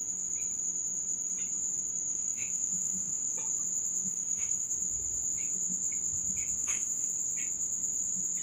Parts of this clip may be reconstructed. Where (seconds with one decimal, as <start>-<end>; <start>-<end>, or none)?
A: 2.1-3.3; 4.1-4.7; 6.6-7.1